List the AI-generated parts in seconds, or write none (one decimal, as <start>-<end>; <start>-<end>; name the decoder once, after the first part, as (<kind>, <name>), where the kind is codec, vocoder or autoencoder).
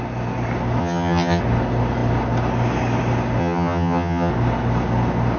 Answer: 0.8-1.4 (vocoder, HiFi-GAN); 3.4-4.3